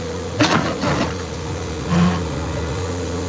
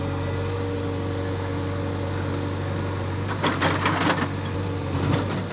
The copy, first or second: first